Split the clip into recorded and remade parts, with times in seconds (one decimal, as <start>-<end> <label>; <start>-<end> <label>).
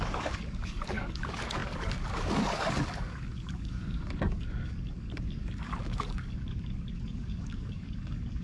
0.0-8.4 remade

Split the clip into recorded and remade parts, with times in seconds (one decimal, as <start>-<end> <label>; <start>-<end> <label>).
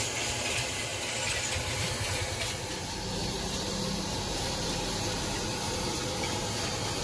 0.0-3.2 recorded; 3.2-4.4 remade; 4.4-7.0 recorded